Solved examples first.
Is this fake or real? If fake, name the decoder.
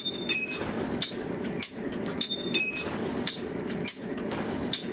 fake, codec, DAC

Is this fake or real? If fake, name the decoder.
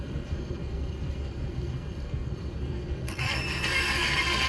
fake, codec, SNAC